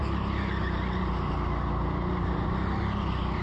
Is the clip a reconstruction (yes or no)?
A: no